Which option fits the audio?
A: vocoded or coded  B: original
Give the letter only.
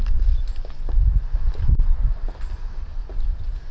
B